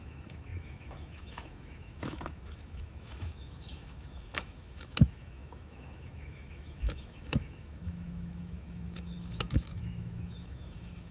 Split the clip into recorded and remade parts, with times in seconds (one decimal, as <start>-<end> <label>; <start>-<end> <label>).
0.0-11.1 remade